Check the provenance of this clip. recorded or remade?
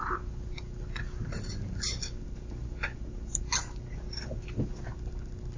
recorded